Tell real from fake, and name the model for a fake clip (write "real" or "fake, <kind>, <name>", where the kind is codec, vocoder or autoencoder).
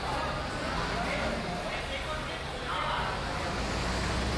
real